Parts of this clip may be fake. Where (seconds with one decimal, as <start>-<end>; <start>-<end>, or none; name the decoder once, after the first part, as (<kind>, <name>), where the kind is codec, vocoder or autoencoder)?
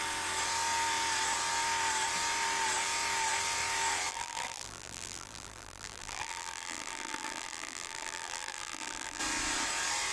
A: 4.1-9.2 (vocoder, BigVGAN v2)